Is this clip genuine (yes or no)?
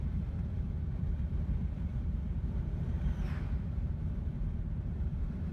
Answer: no